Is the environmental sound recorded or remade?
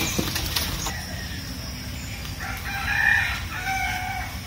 recorded